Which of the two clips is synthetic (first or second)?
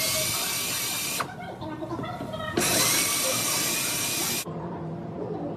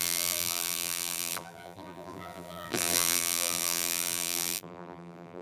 second